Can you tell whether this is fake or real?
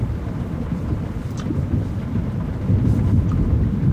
real